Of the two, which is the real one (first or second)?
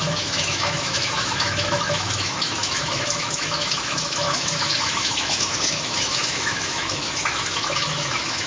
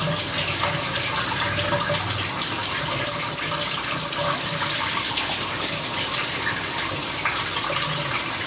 second